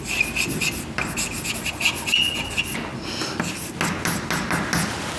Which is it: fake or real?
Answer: real